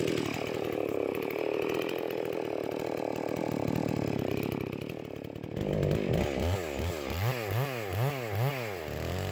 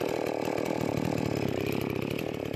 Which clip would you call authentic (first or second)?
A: first